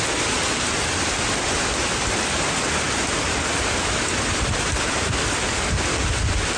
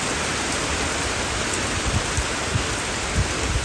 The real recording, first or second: second